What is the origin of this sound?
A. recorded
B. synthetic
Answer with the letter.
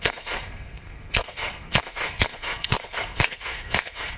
B